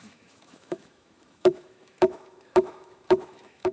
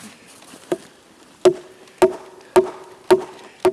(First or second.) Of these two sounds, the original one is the second